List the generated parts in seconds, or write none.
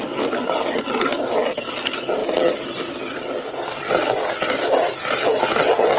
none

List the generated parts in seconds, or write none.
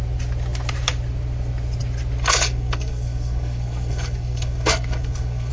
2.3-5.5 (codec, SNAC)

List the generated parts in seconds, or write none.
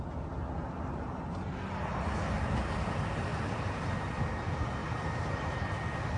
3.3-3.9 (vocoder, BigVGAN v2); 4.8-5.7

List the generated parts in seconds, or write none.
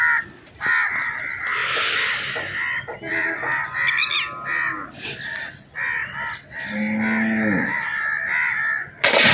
none